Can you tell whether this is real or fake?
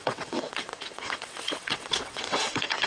fake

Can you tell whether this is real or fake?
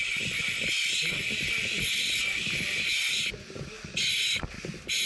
real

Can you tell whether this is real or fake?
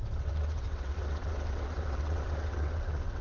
fake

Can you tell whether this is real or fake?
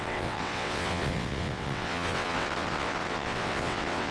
fake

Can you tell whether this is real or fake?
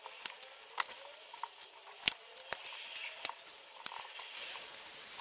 real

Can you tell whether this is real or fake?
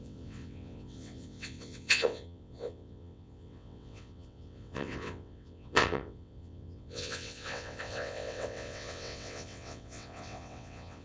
fake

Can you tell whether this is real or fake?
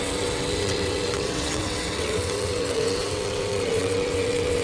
fake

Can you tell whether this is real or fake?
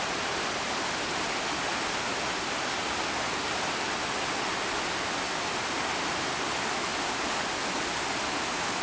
real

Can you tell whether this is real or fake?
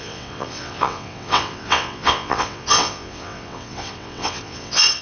fake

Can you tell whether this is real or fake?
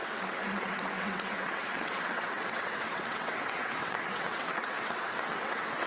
fake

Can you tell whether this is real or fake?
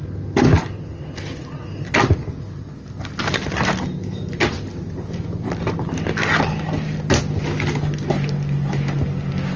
real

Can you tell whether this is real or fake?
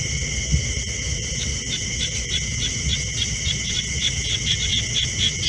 fake